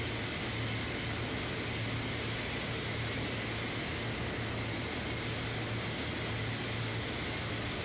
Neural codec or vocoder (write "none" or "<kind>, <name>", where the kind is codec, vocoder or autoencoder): none